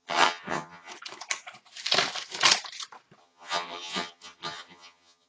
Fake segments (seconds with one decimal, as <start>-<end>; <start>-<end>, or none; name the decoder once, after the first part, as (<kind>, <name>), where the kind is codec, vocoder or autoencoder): 0.0-0.9 (vocoder, HiFi-GAN); 3.2-5.3